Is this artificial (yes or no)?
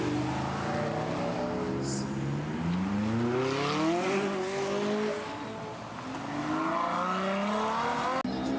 no